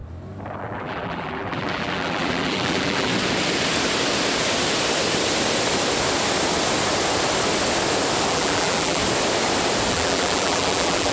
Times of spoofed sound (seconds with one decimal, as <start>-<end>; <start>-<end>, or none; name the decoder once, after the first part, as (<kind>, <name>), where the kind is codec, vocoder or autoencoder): 0.6-3.1 (vocoder, BigVGAN v2); 8.3-9.0; 9.9-11.1